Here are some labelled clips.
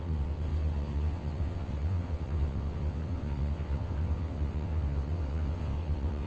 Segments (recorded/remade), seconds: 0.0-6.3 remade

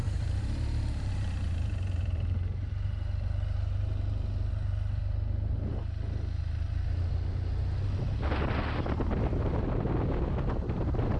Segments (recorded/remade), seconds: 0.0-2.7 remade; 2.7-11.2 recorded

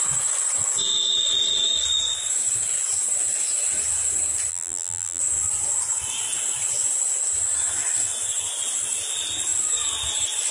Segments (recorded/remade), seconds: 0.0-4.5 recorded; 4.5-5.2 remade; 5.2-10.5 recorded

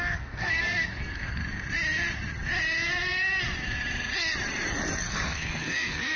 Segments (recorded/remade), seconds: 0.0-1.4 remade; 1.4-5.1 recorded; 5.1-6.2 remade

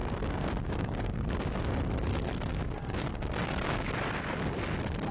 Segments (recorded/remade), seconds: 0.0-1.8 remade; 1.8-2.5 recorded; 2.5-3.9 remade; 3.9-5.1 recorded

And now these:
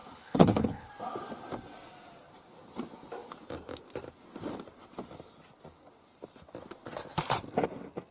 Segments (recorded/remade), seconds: 0.0-0.9 remade; 0.9-8.1 recorded